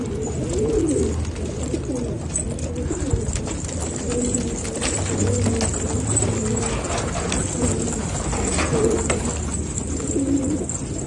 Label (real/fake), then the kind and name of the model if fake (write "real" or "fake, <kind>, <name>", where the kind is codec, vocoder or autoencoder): real